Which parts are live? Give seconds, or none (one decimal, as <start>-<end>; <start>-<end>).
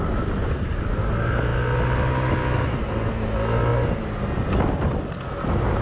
0.0-5.8